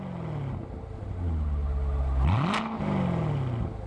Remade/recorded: recorded